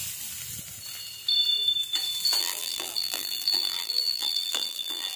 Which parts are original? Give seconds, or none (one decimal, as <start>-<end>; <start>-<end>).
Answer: 0.0-2.4